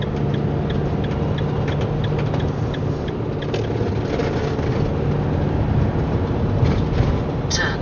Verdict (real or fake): real